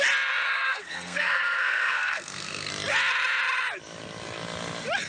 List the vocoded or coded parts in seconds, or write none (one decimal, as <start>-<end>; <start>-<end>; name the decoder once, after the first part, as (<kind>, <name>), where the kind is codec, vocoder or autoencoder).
0.5-2.7 (codec, SNAC)